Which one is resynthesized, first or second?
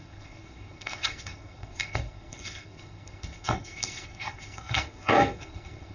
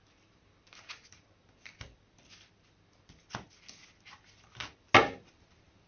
first